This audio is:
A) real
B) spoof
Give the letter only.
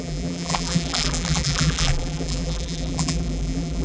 B